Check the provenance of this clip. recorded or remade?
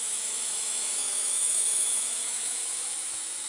remade